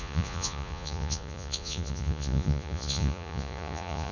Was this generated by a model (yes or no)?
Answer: yes